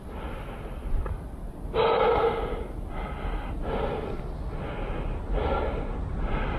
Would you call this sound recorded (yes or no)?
yes